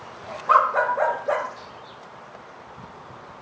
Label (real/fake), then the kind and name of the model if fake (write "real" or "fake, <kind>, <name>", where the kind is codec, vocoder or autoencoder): real